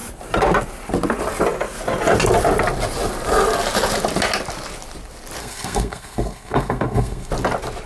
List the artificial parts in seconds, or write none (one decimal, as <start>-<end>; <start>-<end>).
5.4-7.3